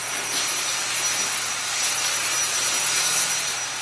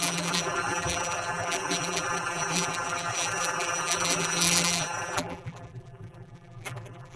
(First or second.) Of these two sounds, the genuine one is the first